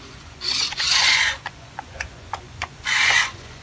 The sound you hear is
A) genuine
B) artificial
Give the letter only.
B